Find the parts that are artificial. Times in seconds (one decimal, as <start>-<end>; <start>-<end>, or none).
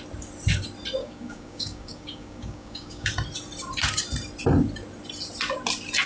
1.0-3.1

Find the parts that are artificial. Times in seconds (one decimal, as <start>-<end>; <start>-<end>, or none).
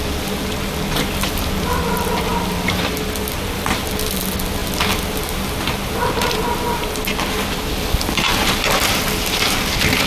8.3-9.6